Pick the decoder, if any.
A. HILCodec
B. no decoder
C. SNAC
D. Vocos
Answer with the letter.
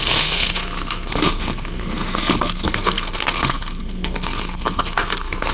C